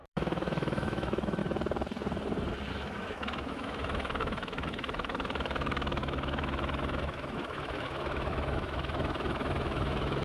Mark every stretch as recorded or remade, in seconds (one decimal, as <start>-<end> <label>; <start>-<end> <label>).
0.0-1.4 remade; 1.4-2.7 recorded; 2.7-10.2 remade